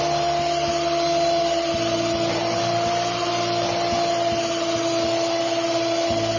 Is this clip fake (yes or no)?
no